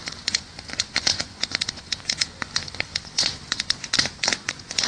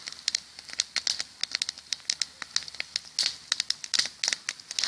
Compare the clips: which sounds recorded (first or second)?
second